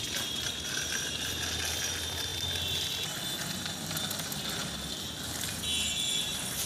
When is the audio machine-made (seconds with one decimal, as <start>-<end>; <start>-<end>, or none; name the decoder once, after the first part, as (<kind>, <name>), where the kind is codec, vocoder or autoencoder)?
none